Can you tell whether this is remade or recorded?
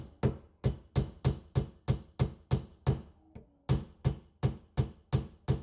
recorded